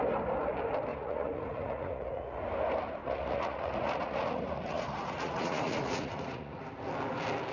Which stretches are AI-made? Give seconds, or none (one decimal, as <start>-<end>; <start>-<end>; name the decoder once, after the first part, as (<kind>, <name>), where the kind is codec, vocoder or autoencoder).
0.9-2.4 (vocoder, Vocos); 3.0-6.6